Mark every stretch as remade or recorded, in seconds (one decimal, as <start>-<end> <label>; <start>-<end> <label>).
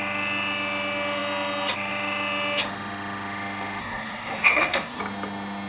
0.0-3.8 recorded; 3.8-5.0 remade; 5.0-5.7 recorded